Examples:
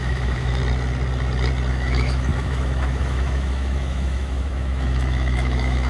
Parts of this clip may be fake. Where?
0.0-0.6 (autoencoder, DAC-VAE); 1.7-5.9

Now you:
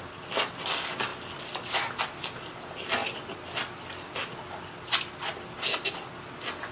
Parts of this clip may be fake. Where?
none